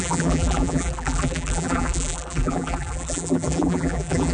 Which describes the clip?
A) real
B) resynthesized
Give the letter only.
B